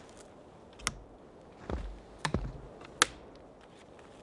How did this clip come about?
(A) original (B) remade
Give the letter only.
A